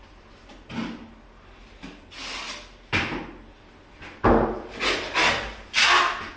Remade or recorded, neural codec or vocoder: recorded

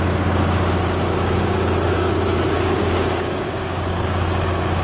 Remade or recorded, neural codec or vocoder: remade, codec, DAC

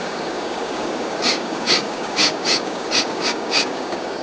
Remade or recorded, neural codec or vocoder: remade, codec, DAC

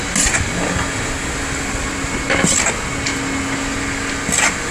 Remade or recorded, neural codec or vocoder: recorded